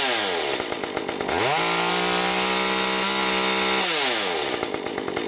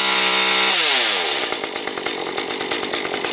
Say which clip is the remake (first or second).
second